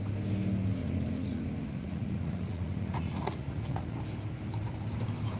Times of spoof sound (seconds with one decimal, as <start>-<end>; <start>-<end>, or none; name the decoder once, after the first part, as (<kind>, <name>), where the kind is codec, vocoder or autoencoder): 0.8-4.0 (vocoder, Vocos)